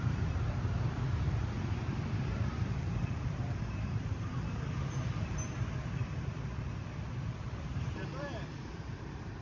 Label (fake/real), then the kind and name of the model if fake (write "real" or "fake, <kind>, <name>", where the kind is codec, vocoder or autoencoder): fake, vocoder, BigVGAN v2